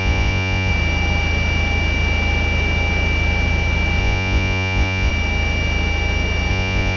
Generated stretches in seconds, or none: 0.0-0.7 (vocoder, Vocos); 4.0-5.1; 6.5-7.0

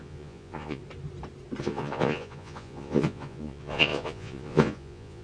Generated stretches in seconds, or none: 0.0-0.8 (vocoder, Vocos); 1.6-5.2

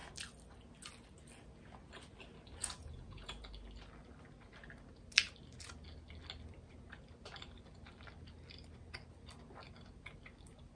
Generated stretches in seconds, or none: 2.6-3.4 (vocoder, Vocos)

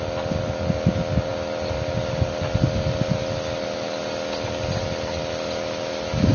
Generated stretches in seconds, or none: none

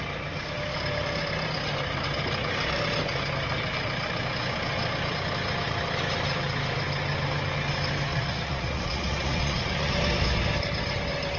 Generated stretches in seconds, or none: 8.1-9.9 (vocoder, Vocos)

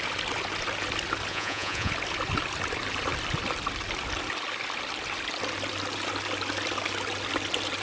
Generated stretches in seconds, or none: 1.3-1.9 (vocoder, Vocos)